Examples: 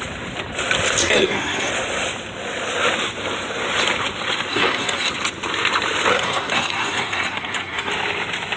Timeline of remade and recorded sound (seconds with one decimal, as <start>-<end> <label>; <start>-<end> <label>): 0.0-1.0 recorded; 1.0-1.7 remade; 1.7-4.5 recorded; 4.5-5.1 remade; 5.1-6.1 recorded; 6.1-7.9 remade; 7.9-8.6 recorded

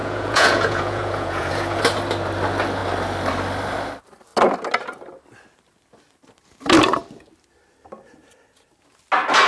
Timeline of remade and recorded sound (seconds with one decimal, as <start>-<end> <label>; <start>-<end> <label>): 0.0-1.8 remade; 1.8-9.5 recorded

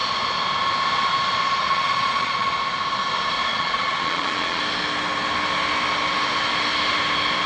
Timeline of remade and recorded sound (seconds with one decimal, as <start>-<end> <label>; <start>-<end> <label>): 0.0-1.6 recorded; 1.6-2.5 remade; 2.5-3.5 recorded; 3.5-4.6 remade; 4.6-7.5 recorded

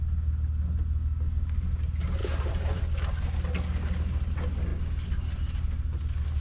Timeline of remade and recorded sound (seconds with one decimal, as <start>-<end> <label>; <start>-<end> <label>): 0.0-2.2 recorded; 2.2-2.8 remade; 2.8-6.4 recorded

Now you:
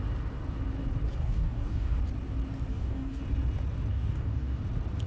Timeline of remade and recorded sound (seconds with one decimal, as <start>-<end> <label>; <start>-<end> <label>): 0.0-1.2 recorded; 1.2-2.0 remade; 2.0-2.7 recorded; 2.7-3.2 remade; 3.2-3.9 recorded; 3.9-4.6 remade; 4.6-5.1 recorded

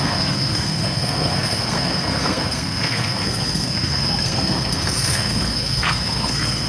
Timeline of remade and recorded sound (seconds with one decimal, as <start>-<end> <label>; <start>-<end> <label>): 0.0-6.7 remade